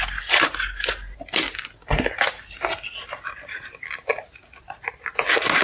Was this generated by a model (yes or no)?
no